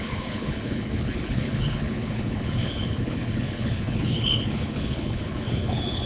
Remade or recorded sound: remade